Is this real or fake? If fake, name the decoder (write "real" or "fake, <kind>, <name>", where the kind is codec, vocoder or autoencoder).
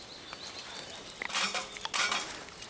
real